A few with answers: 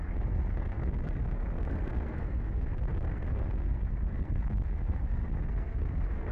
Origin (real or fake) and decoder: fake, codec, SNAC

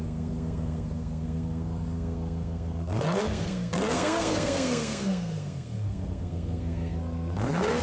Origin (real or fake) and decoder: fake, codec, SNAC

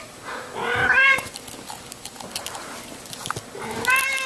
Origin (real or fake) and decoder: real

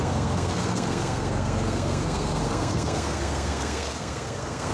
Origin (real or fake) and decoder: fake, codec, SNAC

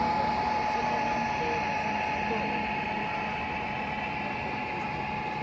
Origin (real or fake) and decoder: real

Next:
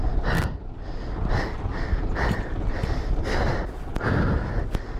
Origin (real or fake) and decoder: real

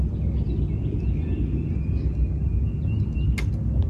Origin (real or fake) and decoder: real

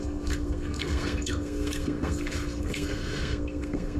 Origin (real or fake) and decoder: fake, codec, SNAC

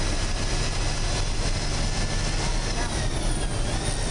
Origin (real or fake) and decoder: real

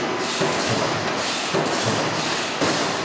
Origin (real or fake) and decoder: real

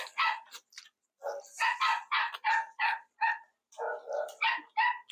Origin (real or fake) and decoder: real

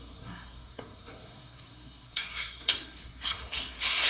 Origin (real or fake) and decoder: fake, codec, SNAC